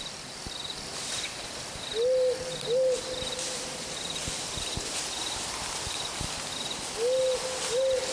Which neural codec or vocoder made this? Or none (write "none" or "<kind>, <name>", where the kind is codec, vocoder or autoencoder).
none